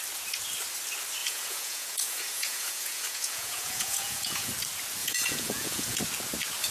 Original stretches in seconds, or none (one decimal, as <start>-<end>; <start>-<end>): 0.0-1.2; 4.5-5.0; 6.0-6.7